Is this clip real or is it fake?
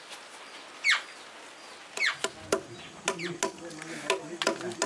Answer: real